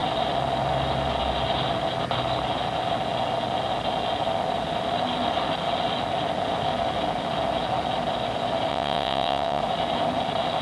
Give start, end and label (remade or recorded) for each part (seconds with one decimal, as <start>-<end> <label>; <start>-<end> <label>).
0.0-8.7 recorded; 8.7-9.6 remade; 9.6-10.6 recorded